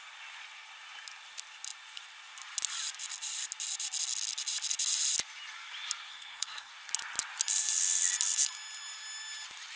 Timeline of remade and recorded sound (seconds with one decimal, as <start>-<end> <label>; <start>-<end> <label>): 0.0-6.1 recorded; 6.1-6.7 remade; 6.7-9.8 recorded